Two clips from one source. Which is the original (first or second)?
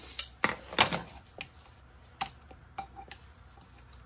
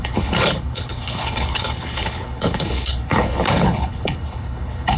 first